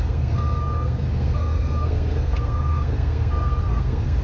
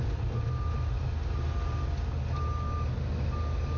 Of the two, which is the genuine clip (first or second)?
second